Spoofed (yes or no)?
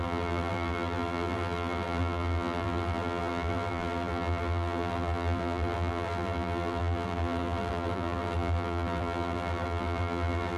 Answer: yes